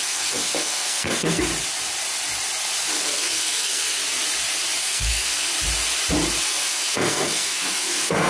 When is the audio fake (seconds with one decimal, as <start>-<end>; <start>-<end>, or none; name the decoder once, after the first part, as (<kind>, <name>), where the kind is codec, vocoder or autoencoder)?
0.0-1.5 (codec, SNAC); 2.9-4.0; 4.8-5.5; 6.4-8.3